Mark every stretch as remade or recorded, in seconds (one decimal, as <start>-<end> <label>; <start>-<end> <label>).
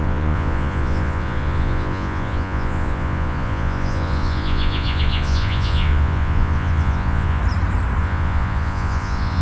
0.0-7.4 remade; 7.4-8.0 recorded; 8.0-9.4 remade